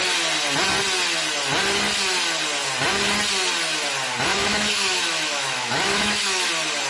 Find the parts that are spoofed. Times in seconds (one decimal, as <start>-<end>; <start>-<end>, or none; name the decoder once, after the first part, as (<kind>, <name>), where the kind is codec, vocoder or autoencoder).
4.3-6.5 (autoencoder, DAC-VAE)